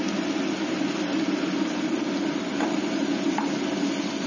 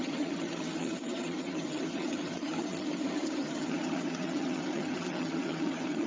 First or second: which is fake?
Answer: second